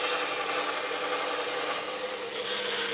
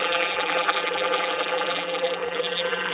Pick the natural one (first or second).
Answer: first